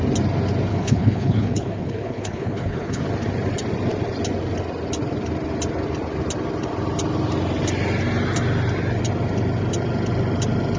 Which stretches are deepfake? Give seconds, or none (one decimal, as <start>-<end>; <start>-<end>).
0.7-3.0